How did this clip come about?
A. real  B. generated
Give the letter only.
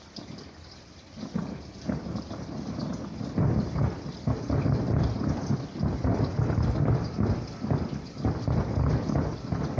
A